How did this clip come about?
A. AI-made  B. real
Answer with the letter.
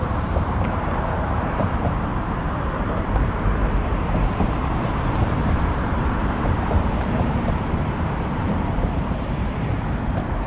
A